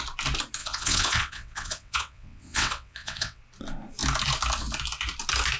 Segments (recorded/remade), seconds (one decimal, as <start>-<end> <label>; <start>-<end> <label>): 0.0-0.6 recorded; 0.6-3.4 remade; 3.4-5.6 recorded